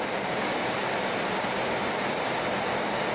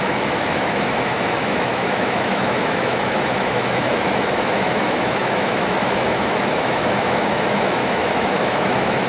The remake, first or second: second